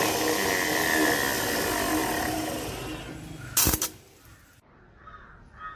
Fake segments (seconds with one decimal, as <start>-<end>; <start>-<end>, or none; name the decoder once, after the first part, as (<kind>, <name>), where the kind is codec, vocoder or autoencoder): none